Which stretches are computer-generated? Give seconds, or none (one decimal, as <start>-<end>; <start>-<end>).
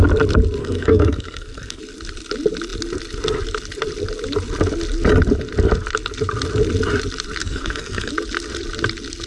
0.6-1.8; 7.4-8.1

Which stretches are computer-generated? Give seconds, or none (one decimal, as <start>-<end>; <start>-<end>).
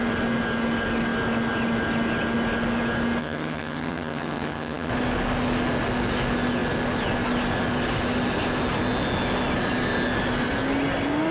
3.2-4.9